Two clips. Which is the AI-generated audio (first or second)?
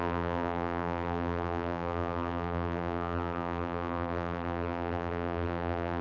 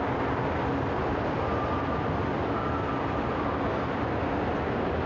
first